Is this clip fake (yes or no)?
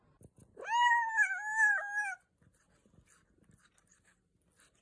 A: no